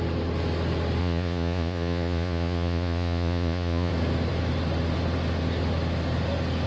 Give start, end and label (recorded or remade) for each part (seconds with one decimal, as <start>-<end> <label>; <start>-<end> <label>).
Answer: 0.0-1.0 recorded; 1.0-3.9 remade; 3.9-6.7 recorded